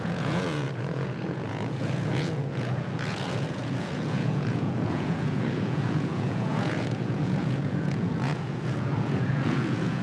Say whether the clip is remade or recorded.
remade